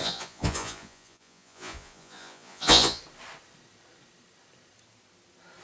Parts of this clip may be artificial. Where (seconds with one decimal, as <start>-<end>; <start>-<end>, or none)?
0.0-3.0